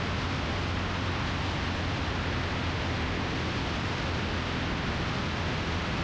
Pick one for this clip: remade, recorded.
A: recorded